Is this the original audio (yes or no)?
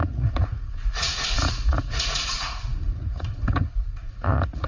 no